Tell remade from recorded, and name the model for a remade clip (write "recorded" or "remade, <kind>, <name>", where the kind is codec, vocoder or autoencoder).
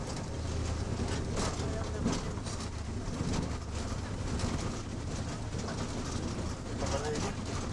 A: recorded